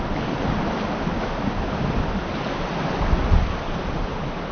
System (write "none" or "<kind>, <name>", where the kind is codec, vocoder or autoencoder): none